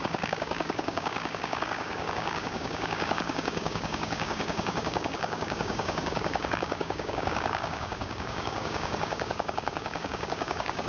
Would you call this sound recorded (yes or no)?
no